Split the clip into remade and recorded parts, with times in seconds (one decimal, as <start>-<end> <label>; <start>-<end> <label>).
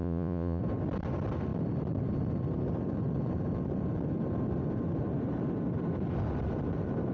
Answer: 0.0-0.6 remade; 0.6-7.1 recorded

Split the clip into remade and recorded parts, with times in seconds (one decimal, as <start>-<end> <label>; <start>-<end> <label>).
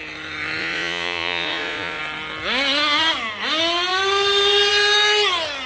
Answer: 0.0-0.6 recorded; 0.6-2.0 remade; 2.0-5.7 recorded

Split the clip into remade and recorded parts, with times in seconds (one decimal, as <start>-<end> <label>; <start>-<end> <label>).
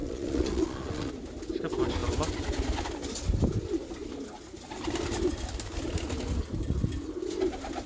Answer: 0.0-1.1 remade; 1.1-7.9 recorded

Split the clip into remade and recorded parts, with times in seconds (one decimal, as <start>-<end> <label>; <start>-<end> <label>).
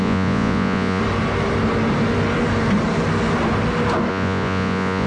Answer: 0.0-1.0 remade; 1.0-4.1 recorded; 4.1-5.1 remade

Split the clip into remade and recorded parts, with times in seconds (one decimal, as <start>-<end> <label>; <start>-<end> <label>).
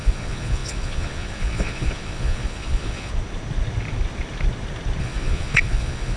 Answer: 0.0-3.1 remade; 3.1-5.0 recorded; 5.0-6.2 remade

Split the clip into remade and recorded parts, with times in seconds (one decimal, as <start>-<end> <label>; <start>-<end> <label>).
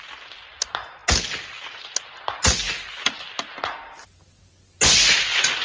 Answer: 0.0-5.6 recorded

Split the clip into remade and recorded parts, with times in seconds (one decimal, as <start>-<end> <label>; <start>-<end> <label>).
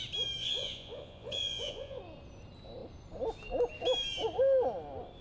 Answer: 0.0-0.4 recorded; 0.4-2.0 remade; 2.0-5.2 recorded